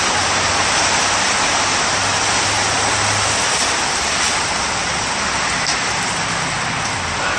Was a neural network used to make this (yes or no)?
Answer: no